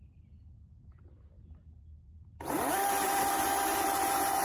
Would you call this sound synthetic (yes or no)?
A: no